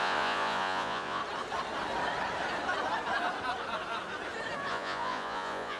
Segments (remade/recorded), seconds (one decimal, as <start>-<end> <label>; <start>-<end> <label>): 0.0-1.2 remade; 1.2-4.7 recorded; 4.7-5.8 remade